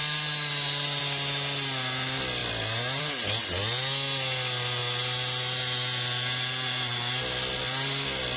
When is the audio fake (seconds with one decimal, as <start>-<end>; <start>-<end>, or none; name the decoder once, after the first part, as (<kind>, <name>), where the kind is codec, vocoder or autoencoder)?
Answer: none